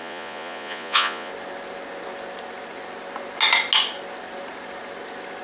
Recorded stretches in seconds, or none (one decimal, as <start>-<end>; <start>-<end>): 1.3-5.4